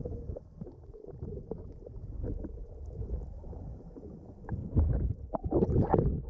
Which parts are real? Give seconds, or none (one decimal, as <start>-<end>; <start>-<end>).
2.4-4.6; 5.2-6.3